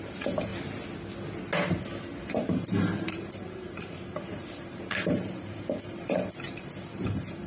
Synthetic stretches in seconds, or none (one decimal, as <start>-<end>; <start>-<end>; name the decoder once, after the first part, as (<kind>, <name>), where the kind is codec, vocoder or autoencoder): 0.0-0.5 (vocoder, BigVGAN v2); 2.2-7.5